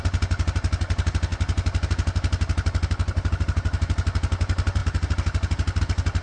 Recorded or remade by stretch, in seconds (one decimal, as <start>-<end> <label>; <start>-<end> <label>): 0.0-6.2 recorded